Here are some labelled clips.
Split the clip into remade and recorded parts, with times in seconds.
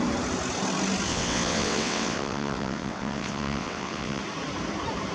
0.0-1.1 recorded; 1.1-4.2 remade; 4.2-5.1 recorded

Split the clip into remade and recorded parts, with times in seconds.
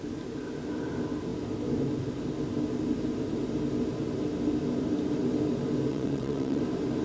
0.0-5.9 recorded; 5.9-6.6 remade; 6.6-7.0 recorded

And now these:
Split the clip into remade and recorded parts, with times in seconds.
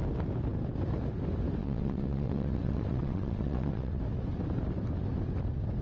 0.0-1.6 recorded; 1.6-4.0 remade; 4.0-5.8 recorded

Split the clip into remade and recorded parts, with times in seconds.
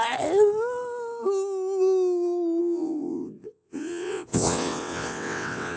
0.0-2.6 recorded; 2.6-5.8 remade